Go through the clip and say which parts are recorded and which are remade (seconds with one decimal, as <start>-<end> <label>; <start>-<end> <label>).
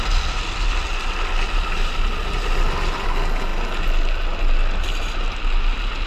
0.0-6.1 recorded